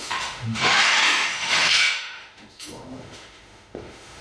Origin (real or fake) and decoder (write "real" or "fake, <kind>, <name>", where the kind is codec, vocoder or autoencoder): fake, autoencoder, DAC-VAE